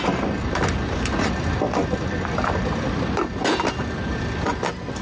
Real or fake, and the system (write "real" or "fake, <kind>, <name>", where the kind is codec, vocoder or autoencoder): real